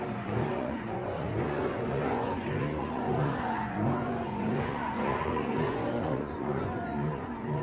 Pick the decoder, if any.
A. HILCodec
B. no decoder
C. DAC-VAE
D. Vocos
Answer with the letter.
D